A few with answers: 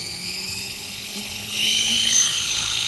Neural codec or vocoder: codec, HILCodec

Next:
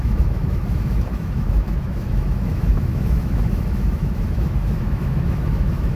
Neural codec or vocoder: autoencoder, DAC-VAE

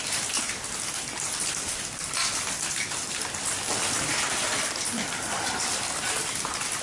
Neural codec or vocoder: none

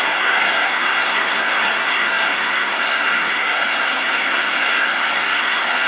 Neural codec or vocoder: codec, SNAC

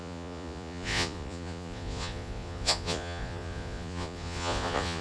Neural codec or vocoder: vocoder, Vocos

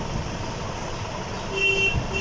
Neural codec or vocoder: none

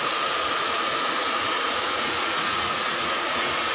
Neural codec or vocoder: vocoder, Vocos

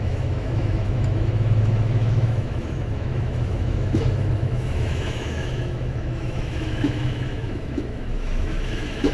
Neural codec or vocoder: autoencoder, DAC-VAE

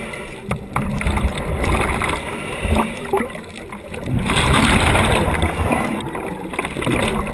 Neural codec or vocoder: none